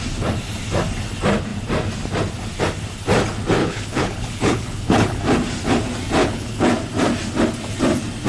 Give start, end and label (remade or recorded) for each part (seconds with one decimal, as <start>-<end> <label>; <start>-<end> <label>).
0.0-3.6 recorded; 3.6-5.2 remade; 5.2-6.2 recorded; 6.2-6.7 remade; 6.7-8.3 recorded